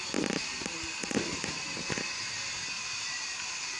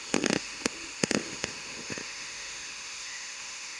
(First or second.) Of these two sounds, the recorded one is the first